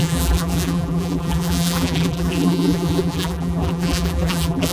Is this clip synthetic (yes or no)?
yes